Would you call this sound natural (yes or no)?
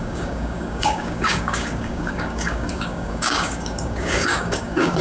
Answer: no